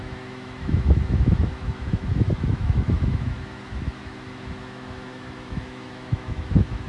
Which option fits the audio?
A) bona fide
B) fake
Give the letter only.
B